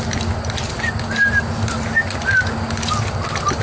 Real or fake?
real